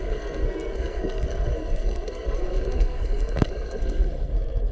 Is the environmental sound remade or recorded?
remade